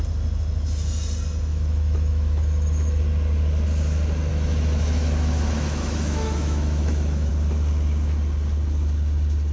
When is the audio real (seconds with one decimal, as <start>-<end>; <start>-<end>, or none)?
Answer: 0.0-1.5; 3.0-4.3; 7.3-9.5